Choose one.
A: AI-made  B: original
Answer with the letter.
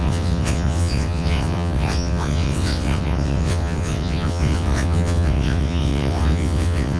A